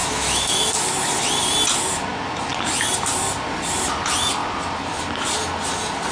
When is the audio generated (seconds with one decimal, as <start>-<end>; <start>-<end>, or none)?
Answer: 0.0-0.7